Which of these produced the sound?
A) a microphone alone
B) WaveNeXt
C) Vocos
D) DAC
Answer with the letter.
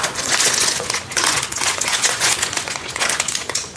C